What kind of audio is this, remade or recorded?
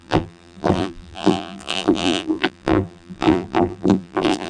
remade